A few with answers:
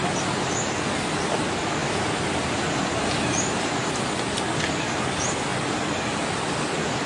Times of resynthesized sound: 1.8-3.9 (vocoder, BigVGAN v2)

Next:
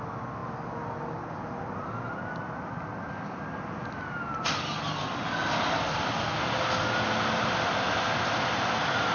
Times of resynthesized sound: none

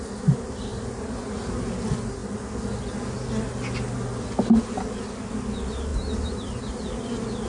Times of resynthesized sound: none

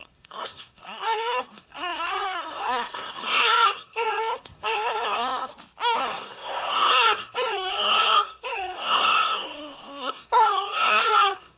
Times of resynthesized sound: 0.0-5.5 (codec, SNAC); 6.0-11.6

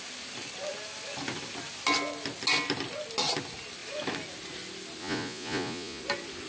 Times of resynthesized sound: 5.0-6.0 (vocoder, Vocos)

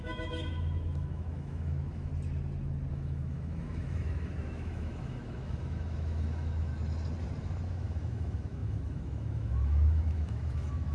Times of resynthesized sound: 0.0-2.1 (autoencoder, DAC-VAE); 2.9-6.7; 7.4-10.9

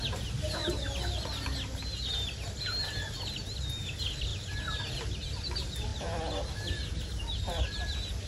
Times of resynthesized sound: none

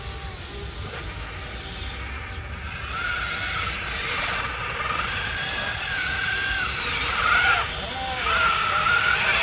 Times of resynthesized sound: none